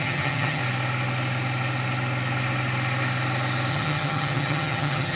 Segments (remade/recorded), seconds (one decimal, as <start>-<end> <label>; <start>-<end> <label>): 0.0-0.6 remade; 0.6-3.7 recorded; 3.7-5.2 remade